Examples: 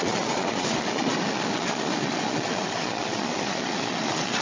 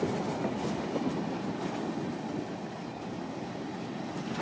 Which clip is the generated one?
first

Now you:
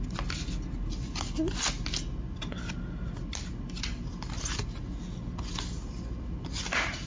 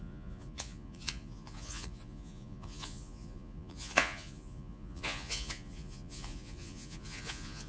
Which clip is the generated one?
second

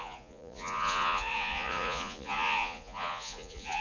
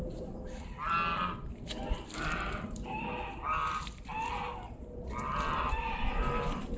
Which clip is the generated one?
first